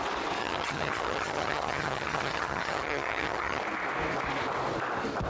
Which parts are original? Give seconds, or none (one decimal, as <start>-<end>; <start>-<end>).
0.0-0.4; 3.6-5.3